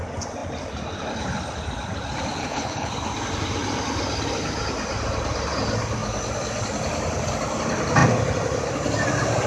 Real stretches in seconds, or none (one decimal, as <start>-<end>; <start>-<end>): 0.0-2.4; 2.9-9.5

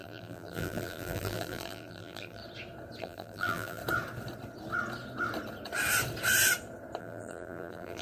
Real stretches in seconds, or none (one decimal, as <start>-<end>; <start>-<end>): 2.4-3.0; 3.8-7.0

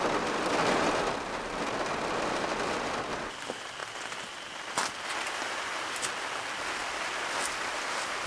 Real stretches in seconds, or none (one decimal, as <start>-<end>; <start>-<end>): 0.0-8.3

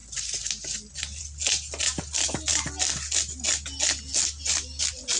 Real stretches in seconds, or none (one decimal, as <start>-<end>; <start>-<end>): 0.0-5.2

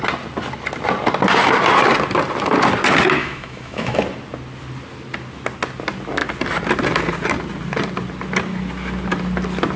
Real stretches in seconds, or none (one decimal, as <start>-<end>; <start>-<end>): 0.0-3.2; 4.0-9.8

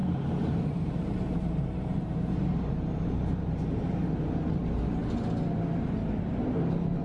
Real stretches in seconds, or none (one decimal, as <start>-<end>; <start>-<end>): 3.1-7.0

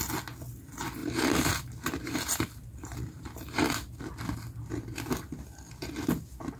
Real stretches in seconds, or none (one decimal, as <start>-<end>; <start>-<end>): 0.0-1.0; 3.7-6.6

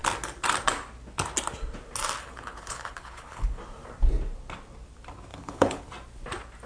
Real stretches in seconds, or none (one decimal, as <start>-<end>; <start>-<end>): 0.0-2.2; 3.6-5.3; 5.8-6.7